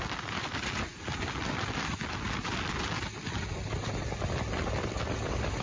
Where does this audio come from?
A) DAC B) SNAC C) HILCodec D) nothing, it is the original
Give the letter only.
D